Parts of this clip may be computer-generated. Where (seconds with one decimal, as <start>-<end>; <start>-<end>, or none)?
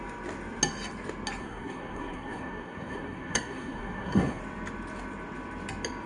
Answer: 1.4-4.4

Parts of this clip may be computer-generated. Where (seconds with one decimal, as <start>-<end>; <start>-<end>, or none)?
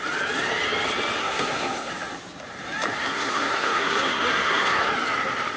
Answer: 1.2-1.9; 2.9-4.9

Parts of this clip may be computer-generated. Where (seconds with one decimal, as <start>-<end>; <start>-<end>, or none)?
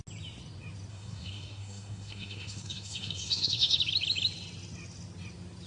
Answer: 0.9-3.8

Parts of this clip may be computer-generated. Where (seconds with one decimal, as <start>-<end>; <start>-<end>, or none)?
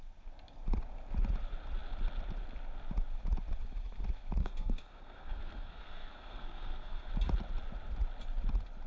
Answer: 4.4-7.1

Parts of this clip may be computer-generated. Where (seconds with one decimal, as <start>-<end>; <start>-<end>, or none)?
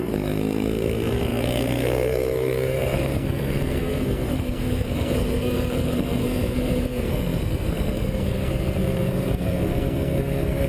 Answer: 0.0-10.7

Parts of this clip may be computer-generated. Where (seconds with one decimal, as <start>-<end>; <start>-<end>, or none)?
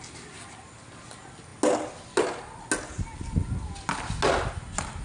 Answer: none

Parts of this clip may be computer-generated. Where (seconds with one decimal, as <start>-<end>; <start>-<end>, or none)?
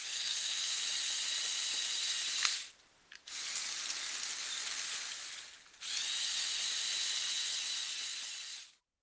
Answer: 0.0-0.8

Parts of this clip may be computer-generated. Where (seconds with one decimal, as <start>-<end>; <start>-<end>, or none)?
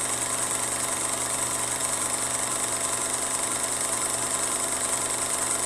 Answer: none